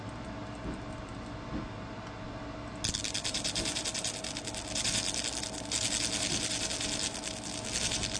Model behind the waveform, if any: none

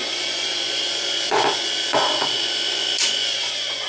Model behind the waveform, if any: vocoder, Vocos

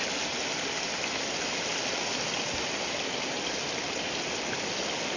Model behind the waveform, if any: none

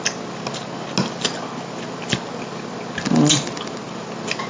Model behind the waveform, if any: none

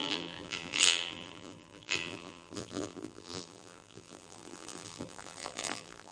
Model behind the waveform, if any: vocoder, BigVGAN v2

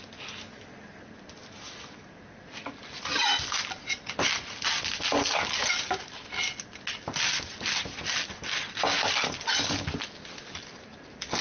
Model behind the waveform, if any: none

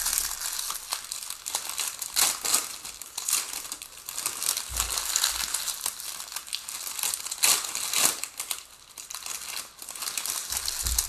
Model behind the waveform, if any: none